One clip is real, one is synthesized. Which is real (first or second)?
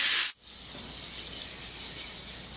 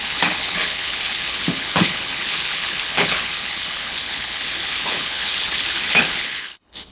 first